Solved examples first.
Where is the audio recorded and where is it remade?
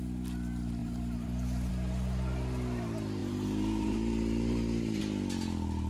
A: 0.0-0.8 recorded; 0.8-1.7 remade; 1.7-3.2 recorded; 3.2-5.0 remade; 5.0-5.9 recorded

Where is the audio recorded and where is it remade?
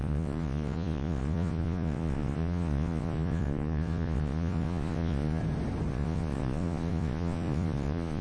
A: 0.0-5.4 remade; 5.4-5.9 recorded; 5.9-8.2 remade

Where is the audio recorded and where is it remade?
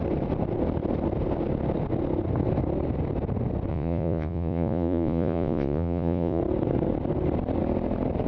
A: 0.0-3.7 recorded; 3.7-6.4 remade; 6.4-8.3 recorded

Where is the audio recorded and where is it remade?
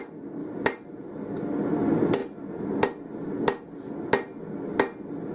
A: 0.0-0.4 recorded; 0.4-1.2 remade; 1.2-5.3 recorded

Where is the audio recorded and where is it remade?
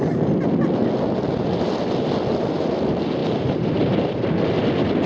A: 0.0-3.2 recorded; 3.2-3.9 remade; 3.9-5.1 recorded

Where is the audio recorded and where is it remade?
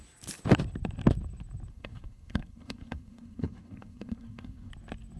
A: 0.0-1.7 recorded; 1.7-4.7 remade; 4.7-5.2 recorded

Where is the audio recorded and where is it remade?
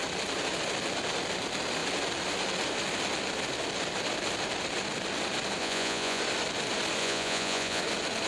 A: 0.0-5.6 recorded; 5.6-6.2 remade; 6.2-7.0 recorded; 7.0-7.8 remade; 7.8-8.3 recorded